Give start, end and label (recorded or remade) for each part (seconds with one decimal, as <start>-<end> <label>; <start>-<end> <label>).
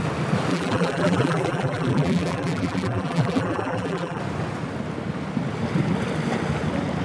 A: 0.0-0.5 recorded; 0.5-4.2 remade; 4.2-7.0 recorded